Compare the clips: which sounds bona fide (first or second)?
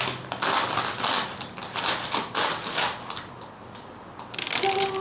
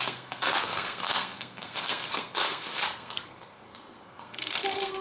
first